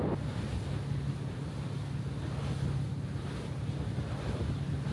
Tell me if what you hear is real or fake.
real